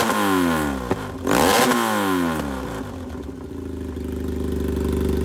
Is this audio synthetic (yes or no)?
no